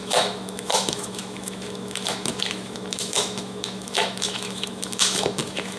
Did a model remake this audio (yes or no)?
yes